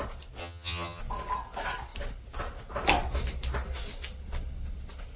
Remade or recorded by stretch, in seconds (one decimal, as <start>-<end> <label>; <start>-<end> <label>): 0.0-0.4 recorded; 0.4-1.0 remade; 1.0-5.2 recorded